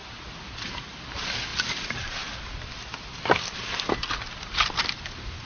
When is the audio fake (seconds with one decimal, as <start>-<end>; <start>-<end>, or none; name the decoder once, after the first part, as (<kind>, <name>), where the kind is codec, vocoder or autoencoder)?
none